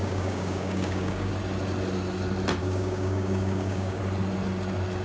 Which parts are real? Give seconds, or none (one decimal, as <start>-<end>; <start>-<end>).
1.3-2.6; 4.0-5.0